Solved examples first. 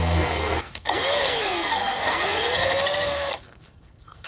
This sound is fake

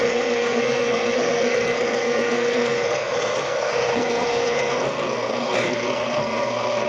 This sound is fake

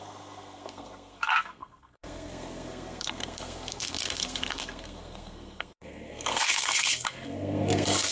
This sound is fake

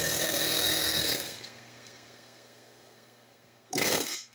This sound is fake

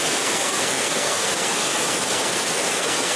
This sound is fake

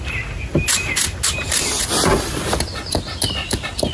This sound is real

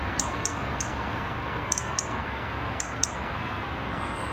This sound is fake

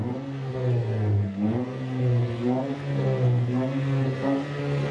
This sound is fake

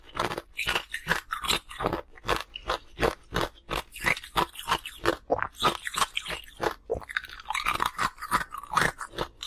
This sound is real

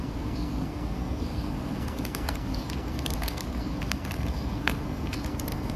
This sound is fake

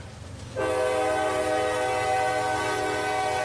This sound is real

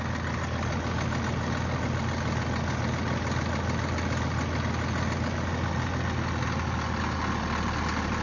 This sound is real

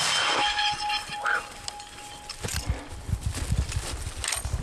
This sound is real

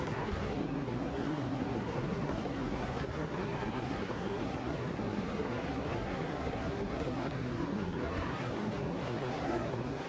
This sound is fake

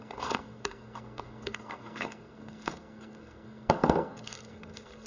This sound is fake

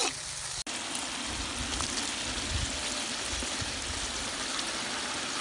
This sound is real